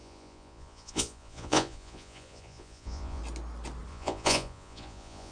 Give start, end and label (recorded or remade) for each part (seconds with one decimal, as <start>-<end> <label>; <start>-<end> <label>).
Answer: 0.0-3.2 remade; 3.2-3.9 recorded; 3.9-5.3 remade